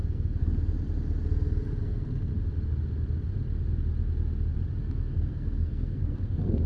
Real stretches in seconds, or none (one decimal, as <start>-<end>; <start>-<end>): 0.4-1.8; 2.3-4.8